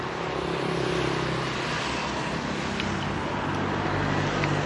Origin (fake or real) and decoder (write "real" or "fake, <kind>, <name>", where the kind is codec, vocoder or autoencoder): real